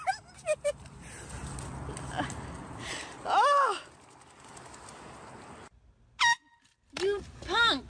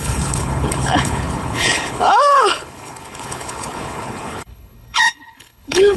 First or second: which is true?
first